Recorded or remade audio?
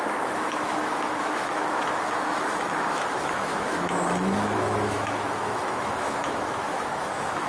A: remade